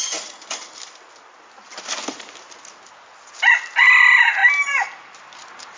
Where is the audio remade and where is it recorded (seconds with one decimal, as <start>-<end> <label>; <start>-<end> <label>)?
0.0-5.8 recorded